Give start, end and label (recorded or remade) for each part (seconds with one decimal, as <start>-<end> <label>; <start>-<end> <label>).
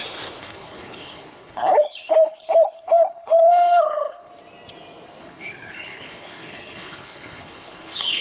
0.0-0.4 recorded; 0.4-4.3 remade; 4.3-5.2 recorded; 5.2-8.2 remade